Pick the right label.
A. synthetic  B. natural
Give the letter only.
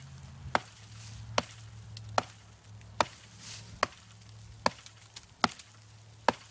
B